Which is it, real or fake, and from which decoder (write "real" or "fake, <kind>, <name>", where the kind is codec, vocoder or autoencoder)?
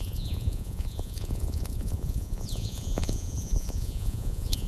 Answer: fake, vocoder, Vocos